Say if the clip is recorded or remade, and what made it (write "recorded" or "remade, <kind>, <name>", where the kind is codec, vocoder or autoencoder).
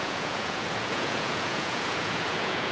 remade, vocoder, Vocos